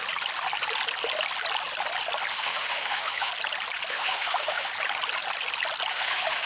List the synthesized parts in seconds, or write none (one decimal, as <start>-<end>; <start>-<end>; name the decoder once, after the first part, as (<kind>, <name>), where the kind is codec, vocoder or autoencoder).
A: 2.3-3.3 (autoencoder, DAC-VAE); 3.9-4.7; 5.9-6.5